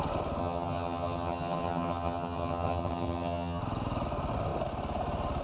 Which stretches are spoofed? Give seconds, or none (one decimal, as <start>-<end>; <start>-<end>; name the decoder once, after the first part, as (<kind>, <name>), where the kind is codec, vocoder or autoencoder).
0.4-3.6 (vocoder, HiFi-GAN)